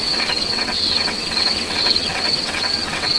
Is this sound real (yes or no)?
no